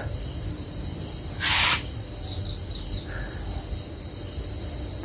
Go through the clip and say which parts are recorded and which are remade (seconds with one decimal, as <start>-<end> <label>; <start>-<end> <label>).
0.0-0.9 recorded; 0.9-1.9 remade; 1.9-5.0 recorded